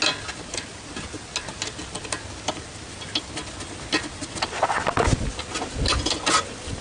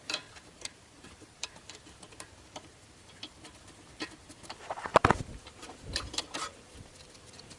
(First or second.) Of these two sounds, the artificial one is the second